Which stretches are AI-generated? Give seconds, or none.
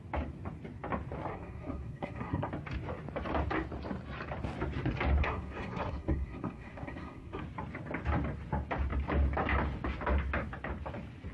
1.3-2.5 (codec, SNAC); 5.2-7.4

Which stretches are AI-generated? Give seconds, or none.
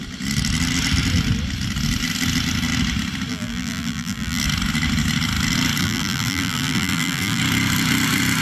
3.3-4.4 (vocoder, BigVGAN v2); 5.8-7.4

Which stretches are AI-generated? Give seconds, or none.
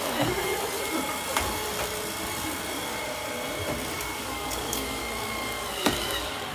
0.0-0.5 (codec, DAC); 4.0-5.0; 5.7-6.5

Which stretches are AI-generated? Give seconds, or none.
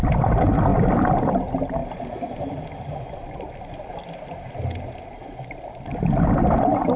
none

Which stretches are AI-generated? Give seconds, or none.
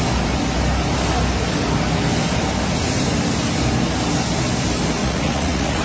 5.0-5.8 (vocoder, Vocos)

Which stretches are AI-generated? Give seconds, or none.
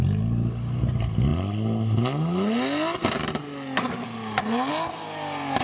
none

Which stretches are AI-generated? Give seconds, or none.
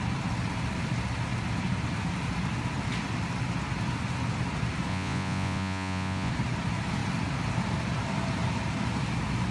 4.9-6.3 (vocoder, Vocos)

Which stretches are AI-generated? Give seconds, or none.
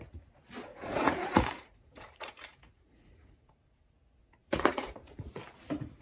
0.7-3.5 (vocoder, Vocos); 4.2-5.4